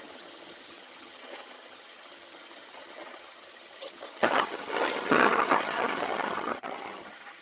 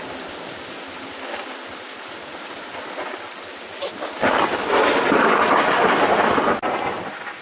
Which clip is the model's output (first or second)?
first